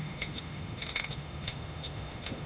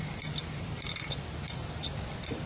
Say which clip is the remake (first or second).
first